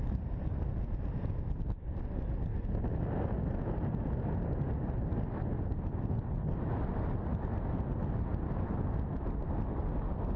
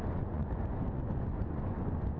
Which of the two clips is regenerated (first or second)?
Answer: second